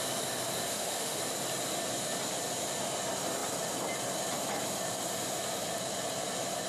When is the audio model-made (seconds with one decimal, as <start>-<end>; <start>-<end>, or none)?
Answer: 0.7-1.2